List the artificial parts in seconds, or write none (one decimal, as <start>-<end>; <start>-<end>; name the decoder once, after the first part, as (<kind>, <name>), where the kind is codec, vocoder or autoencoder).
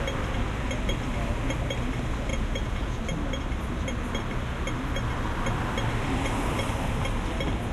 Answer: 2.3-3.0 (vocoder, Vocos)